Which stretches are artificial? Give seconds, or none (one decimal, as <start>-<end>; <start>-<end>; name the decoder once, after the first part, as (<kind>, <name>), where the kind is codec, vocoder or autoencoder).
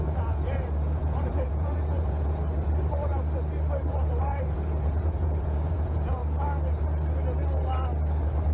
0.0-2.4 (vocoder, Vocos); 4.2-6.2